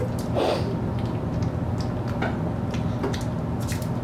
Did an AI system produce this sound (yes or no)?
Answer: no